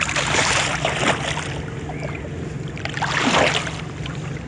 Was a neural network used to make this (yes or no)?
no